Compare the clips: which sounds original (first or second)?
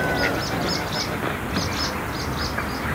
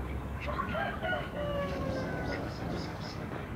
first